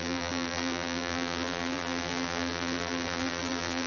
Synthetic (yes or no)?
yes